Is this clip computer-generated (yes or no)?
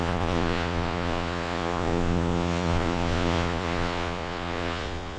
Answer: yes